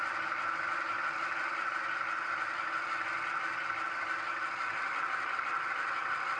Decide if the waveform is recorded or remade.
remade